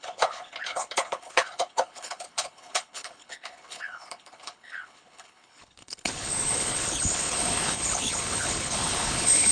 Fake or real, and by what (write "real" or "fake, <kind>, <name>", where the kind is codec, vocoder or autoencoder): fake, codec, HILCodec